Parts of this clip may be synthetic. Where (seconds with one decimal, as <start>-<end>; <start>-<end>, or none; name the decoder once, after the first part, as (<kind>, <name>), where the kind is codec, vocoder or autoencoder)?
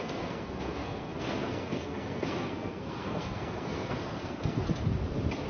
0.0-4.6 (codec, SNAC)